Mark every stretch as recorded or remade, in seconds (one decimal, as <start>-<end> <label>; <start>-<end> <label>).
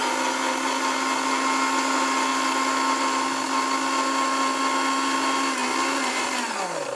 0.0-7.0 recorded